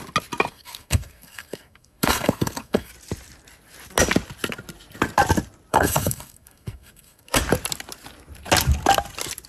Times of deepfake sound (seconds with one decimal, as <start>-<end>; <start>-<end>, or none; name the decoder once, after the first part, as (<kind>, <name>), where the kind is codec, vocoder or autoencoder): 0.5-2.9 (codec, SNAC); 5.7-7.4